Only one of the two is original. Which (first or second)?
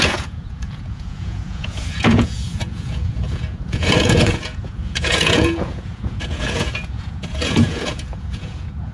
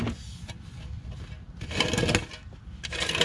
second